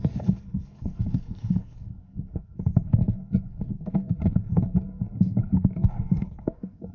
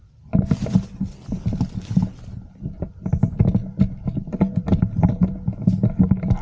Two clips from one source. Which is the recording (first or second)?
second